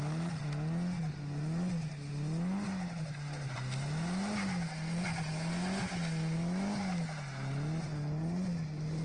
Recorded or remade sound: recorded